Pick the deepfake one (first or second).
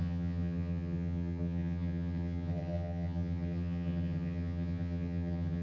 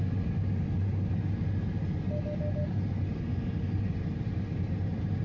first